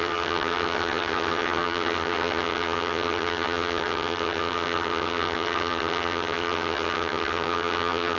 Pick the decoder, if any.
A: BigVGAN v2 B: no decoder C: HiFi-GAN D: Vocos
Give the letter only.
C